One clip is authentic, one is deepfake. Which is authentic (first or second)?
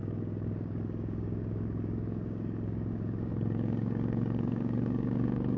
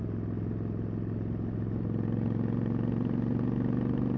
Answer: second